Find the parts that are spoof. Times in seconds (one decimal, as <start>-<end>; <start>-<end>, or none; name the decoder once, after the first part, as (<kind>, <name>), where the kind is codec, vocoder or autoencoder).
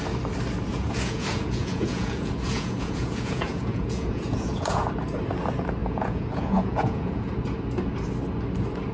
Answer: 0.7-4.9 (vocoder, Vocos); 5.8-7.3